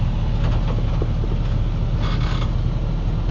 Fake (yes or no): no